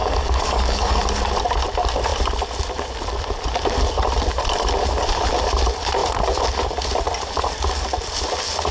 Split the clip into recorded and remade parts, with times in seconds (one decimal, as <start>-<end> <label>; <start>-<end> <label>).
0.0-1.0 remade; 1.0-8.7 recorded